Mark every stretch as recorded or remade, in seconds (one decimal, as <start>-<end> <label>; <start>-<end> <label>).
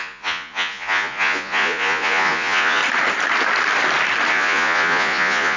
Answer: 0.0-2.8 remade; 2.8-4.3 recorded; 4.3-5.6 remade